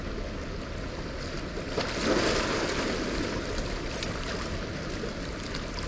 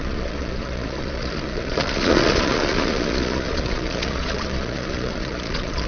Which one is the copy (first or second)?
second